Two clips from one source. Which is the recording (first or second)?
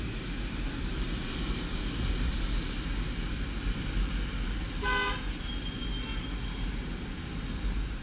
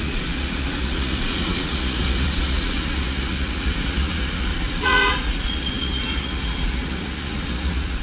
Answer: first